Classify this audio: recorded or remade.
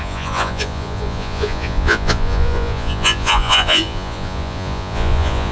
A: remade